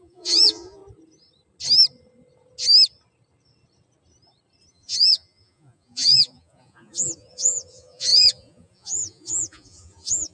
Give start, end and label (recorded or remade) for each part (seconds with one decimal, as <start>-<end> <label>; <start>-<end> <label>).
0.0-0.8 remade; 0.8-4.7 recorded; 4.7-10.3 remade